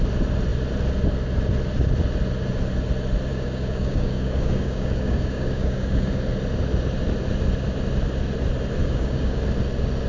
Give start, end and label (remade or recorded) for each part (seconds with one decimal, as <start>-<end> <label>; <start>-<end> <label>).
0.0-3.3 recorded; 3.3-6.2 remade; 6.2-8.8 recorded; 8.8-9.4 remade; 9.4-10.1 recorded